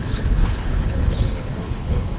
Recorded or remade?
remade